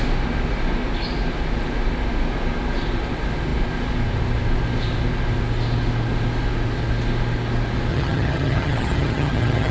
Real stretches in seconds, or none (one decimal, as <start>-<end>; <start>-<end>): 0.0-7.9